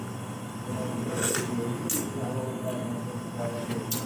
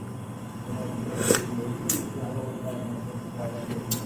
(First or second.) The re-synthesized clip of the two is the second